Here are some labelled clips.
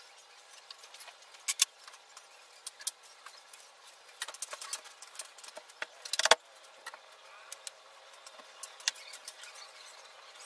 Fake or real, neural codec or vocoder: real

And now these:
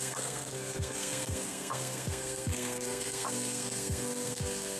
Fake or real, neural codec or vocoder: fake, codec, SNAC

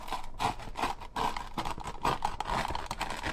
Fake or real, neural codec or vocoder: real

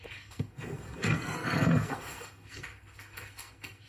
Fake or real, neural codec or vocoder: fake, codec, SNAC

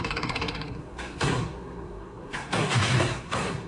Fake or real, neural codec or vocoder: fake, codec, SNAC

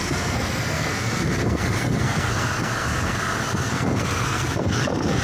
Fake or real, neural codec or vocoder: fake, codec, SNAC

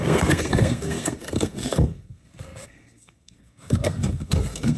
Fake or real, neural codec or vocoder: fake, codec, SNAC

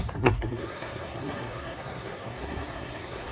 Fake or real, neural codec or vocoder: fake, codec, SNAC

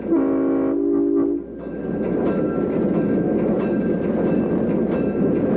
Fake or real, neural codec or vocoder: real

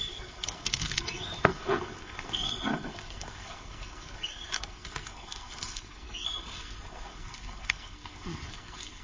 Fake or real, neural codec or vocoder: fake, codec, SNAC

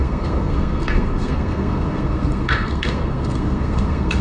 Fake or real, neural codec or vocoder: fake, codec, SNAC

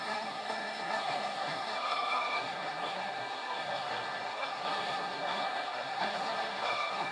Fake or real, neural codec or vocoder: fake, codec, SNAC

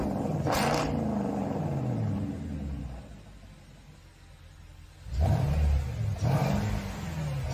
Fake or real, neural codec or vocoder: real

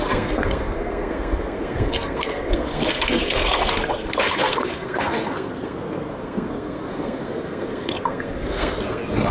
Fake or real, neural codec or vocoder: fake, codec, SNAC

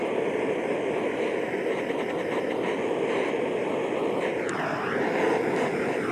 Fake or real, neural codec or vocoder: real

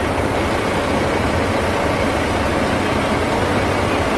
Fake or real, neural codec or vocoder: real